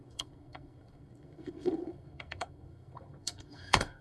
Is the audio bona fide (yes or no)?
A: no